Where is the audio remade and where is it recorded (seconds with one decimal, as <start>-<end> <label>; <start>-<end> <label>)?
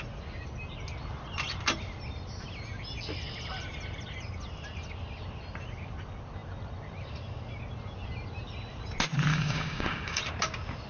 0.0-9.3 recorded; 9.3-10.2 remade; 10.2-10.9 recorded